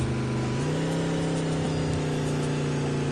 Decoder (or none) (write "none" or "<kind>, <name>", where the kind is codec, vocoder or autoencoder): none